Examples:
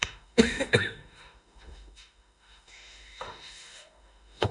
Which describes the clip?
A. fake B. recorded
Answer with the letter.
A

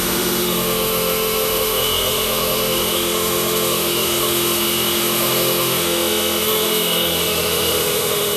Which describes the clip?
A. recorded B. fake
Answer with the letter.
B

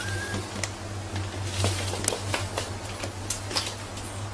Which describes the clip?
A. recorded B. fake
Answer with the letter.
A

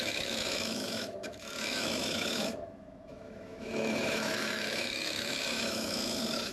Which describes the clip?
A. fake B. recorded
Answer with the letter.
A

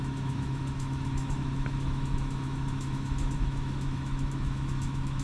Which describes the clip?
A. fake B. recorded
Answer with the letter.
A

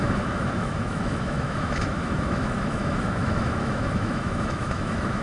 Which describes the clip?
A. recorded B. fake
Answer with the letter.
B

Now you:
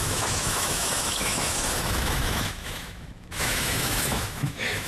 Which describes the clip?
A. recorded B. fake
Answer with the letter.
B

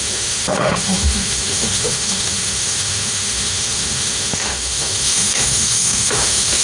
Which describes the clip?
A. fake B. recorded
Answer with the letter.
A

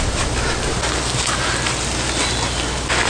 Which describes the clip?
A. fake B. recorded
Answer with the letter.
B